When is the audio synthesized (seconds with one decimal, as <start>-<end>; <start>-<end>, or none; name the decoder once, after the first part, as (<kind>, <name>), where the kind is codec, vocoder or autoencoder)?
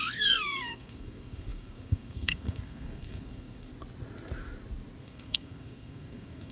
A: 0.0-3.7 (codec, SNAC); 5.0-6.5